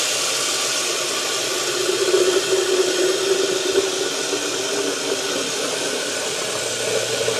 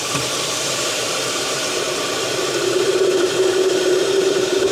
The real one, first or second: first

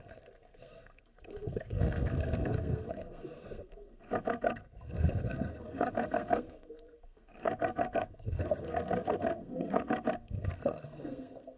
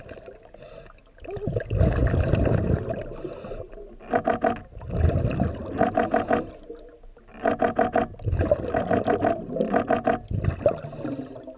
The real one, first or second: second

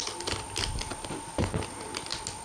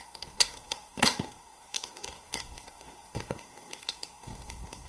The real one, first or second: first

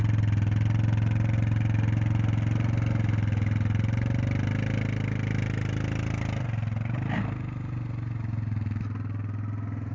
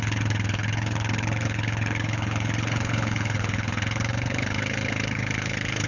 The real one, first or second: first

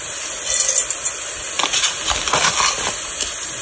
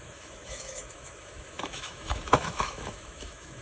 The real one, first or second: first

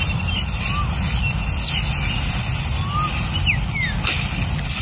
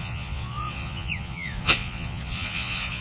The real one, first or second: first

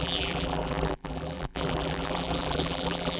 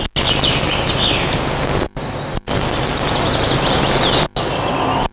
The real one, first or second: second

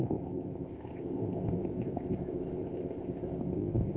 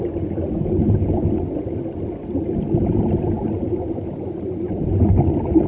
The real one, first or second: second